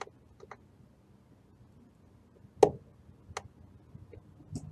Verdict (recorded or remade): recorded